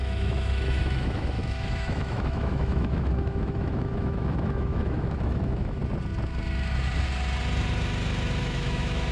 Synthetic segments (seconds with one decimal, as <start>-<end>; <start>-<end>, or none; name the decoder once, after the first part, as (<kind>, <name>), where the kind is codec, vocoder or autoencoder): 0.0-5.8 (autoencoder, DAC-VAE); 8.4-9.1